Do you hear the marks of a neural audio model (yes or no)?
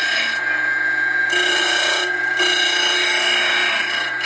no